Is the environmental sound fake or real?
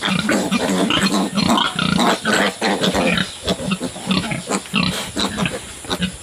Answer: real